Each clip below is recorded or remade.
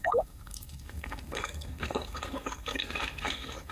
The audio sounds remade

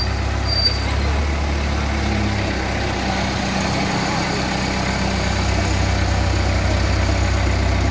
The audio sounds recorded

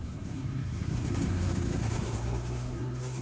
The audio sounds remade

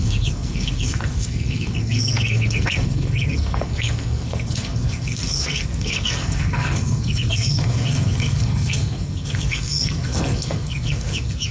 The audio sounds remade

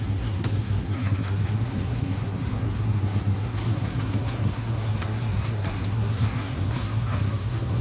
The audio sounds remade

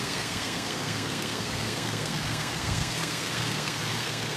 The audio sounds remade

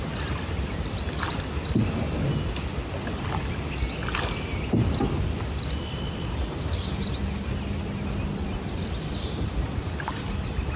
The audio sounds recorded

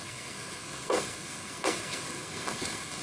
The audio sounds remade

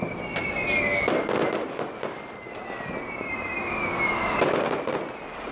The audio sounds recorded